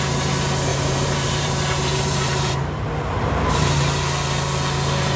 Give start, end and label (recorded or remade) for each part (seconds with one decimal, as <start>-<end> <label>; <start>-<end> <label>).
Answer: 0.0-0.7 recorded; 0.7-3.8 remade; 3.8-5.2 recorded